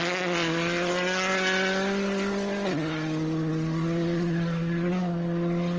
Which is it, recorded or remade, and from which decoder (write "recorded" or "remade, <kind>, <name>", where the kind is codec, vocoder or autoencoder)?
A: recorded